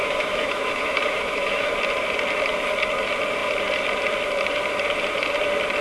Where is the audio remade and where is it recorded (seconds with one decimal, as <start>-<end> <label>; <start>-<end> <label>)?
0.0-1.7 remade; 1.7-5.8 recorded